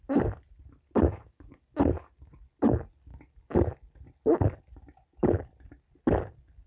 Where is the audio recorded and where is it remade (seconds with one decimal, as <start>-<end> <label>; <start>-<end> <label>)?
0.0-6.7 recorded